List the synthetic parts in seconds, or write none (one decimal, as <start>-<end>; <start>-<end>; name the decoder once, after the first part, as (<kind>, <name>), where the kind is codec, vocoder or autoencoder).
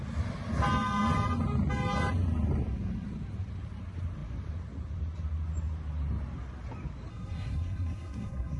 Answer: 7.1-8.6 (codec, SNAC)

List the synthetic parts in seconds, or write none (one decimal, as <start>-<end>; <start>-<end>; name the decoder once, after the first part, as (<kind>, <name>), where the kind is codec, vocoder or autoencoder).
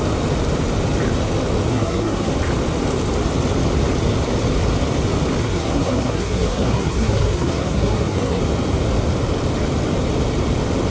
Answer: 1.7-2.3 (codec, SNAC); 5.4-8.4